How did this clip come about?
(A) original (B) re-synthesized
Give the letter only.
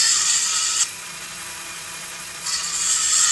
B